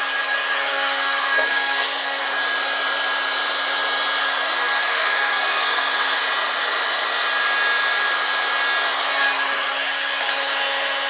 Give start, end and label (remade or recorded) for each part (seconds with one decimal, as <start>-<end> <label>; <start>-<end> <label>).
0.0-0.7 recorded; 0.7-2.2 remade; 2.2-4.2 recorded; 4.2-6.2 remade; 6.2-11.1 recorded